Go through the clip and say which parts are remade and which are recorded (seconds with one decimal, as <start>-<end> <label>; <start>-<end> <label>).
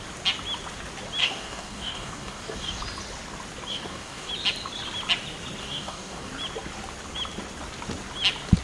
0.0-1.2 recorded; 1.2-2.8 remade; 2.8-3.7 recorded; 3.7-4.3 remade; 4.3-5.6 recorded; 5.6-6.3 remade; 6.3-8.6 recorded